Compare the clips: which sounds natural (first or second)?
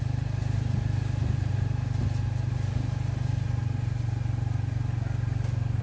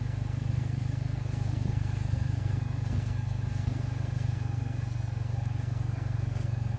first